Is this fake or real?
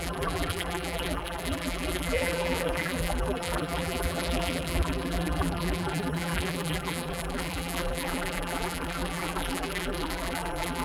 fake